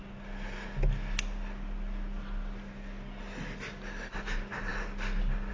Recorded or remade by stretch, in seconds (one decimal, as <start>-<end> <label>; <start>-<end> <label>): 0.0-5.5 recorded